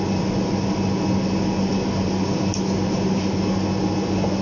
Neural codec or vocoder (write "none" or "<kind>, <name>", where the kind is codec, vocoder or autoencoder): none